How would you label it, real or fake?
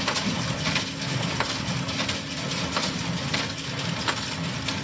real